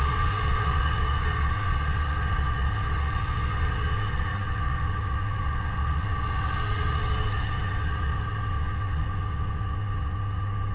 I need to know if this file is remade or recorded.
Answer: remade